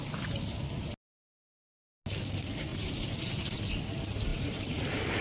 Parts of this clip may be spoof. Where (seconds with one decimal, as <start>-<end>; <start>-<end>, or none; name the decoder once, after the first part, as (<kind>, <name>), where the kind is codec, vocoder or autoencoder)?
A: none